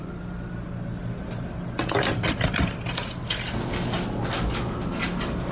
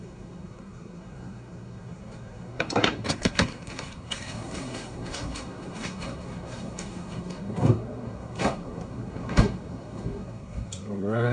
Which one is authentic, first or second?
first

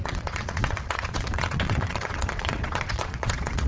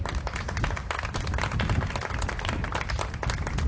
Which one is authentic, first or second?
second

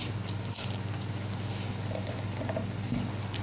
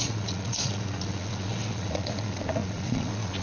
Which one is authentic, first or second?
first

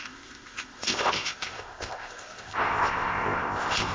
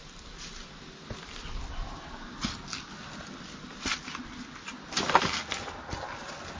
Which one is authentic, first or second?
second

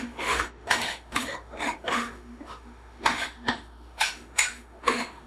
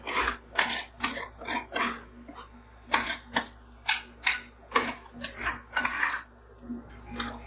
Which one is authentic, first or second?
second